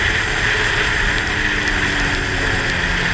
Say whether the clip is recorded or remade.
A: recorded